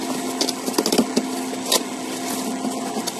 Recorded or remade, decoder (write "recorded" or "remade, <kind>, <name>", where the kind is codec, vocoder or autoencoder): recorded